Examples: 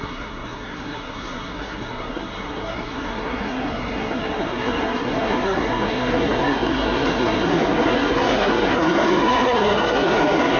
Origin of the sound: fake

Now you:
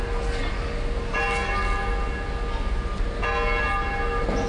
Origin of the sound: real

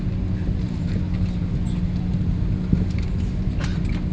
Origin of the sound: real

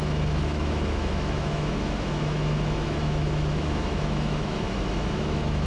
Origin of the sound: fake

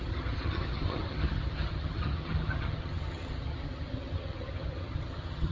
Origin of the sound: fake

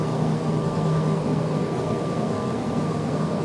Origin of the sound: fake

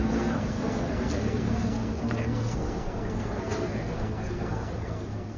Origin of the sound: fake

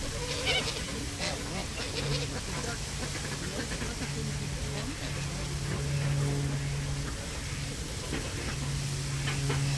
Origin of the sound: real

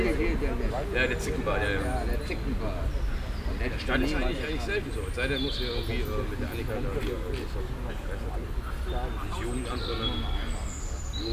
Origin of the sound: real